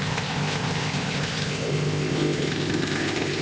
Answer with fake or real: fake